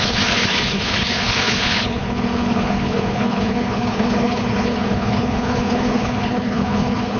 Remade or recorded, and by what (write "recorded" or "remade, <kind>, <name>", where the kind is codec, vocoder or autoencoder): remade, codec, HILCodec